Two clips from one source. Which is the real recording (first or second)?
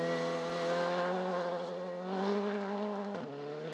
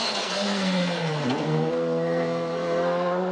first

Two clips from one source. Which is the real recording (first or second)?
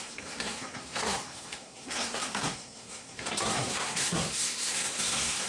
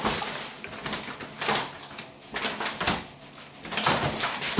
second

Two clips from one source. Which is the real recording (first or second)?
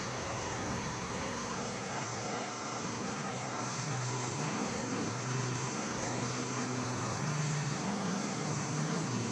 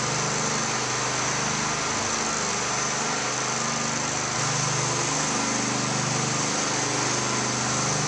second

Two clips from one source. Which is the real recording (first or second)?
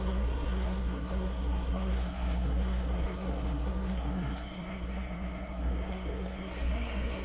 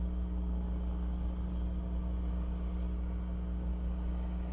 second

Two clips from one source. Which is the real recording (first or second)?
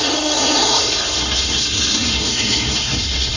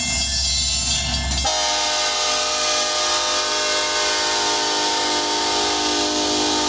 second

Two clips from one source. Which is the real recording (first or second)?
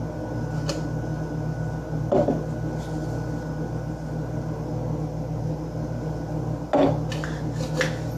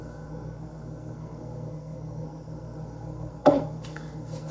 first